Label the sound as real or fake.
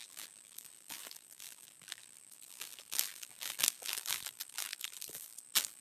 fake